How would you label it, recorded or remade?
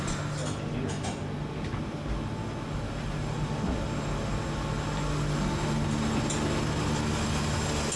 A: recorded